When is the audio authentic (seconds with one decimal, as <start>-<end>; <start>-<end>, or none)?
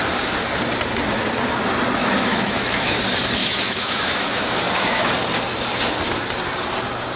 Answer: 0.0-2.0; 3.0-3.4; 5.1-7.2